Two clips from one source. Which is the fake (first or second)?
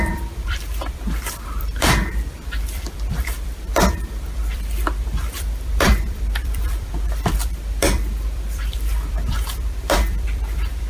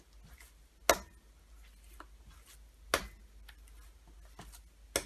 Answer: first